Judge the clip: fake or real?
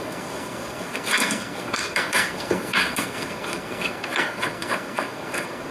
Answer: fake